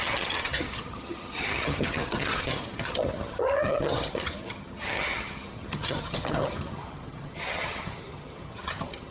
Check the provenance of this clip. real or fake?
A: fake